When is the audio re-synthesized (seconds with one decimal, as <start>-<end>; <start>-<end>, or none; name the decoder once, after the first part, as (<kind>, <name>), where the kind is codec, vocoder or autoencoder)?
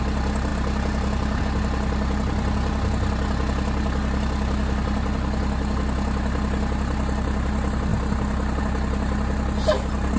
none